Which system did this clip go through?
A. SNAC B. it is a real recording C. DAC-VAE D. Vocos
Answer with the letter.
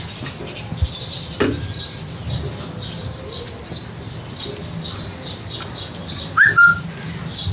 B